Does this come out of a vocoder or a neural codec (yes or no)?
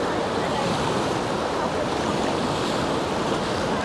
no